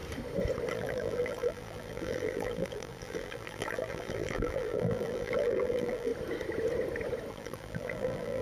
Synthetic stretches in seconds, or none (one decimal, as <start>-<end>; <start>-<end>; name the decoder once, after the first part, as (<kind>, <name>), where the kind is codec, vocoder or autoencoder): 0.7-6.1 (vocoder, BigVGAN v2); 7.3-8.4